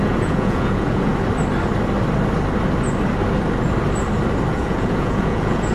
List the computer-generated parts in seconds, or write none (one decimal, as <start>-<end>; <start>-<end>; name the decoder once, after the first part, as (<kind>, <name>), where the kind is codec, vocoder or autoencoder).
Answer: 0.0-1.1 (vocoder, Vocos); 4.5-5.7